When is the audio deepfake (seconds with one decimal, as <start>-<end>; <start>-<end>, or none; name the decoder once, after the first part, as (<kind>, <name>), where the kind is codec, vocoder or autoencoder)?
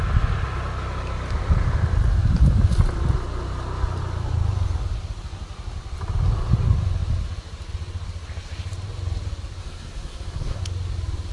9.6-10.6 (codec, SNAC)